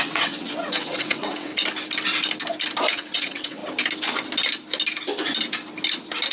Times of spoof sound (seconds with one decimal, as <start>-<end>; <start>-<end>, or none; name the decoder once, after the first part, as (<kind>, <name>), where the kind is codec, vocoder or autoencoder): 0.0-1.5 (vocoder, WaveNeXt); 2.9-3.6